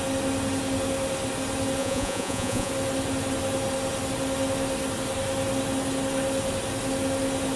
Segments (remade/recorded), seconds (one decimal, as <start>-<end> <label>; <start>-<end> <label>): 0.0-1.8 recorded; 1.8-2.7 remade; 2.7-7.6 recorded